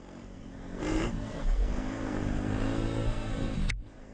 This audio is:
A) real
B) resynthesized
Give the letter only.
B